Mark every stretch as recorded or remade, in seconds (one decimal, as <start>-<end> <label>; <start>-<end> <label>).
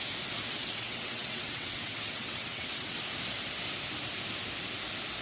0.0-0.6 recorded; 0.6-3.0 remade; 3.0-5.2 recorded